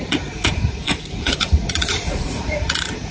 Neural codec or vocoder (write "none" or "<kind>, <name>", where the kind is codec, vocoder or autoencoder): vocoder, Vocos